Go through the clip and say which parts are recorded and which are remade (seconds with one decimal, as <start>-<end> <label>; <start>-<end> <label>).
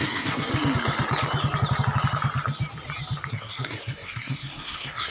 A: 0.0-0.5 remade; 0.5-3.3 recorded; 3.3-5.1 remade